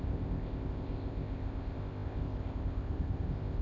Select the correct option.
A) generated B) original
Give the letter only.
A